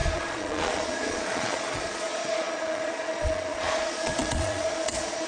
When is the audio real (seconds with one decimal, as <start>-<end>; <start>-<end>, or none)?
none